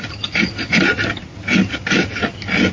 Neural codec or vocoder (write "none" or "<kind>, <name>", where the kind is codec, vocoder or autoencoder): none